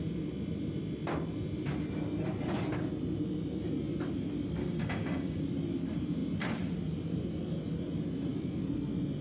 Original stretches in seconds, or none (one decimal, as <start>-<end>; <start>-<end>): 0.0-4.6; 5.4-9.2